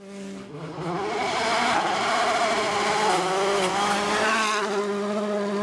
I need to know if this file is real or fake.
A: real